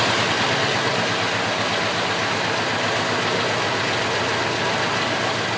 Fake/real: real